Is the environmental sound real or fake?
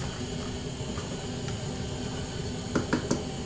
real